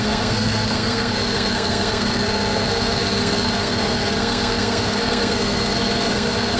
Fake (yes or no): yes